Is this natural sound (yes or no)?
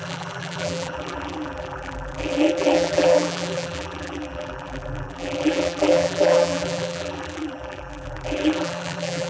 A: no